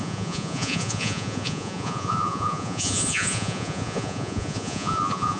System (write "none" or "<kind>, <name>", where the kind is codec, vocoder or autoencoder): vocoder, Vocos